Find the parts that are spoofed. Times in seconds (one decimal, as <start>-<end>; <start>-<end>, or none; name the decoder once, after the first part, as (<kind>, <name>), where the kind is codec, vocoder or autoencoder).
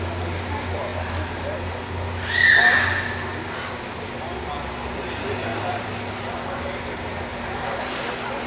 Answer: 5.5-6.1 (vocoder, BigVGAN v2); 7.3-8.0